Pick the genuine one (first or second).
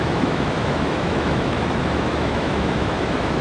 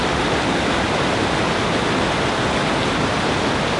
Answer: second